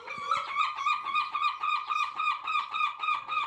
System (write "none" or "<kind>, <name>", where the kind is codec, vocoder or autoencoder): vocoder, Vocos